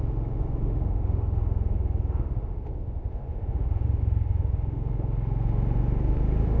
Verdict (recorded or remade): remade